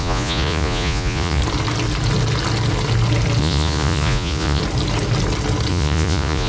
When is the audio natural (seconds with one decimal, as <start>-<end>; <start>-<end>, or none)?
1.4-3.4; 4.6-5.7